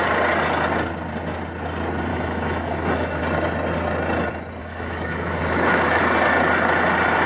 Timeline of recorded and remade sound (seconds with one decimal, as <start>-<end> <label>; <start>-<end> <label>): 0.0-2.1 recorded; 2.1-3.2 remade; 3.2-4.6 recorded; 4.6-6.0 remade; 6.0-7.3 recorded